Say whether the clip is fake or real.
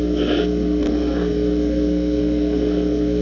fake